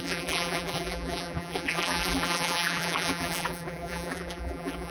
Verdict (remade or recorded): remade